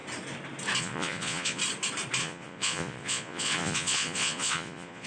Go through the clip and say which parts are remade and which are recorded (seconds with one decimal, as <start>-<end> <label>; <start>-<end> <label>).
0.0-0.8 recorded; 0.8-1.6 remade; 1.6-2.2 recorded; 2.2-5.1 remade